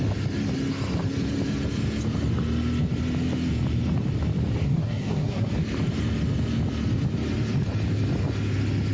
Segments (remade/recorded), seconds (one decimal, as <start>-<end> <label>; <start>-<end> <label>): 0.0-4.6 recorded; 4.6-5.5 remade; 5.5-8.9 recorded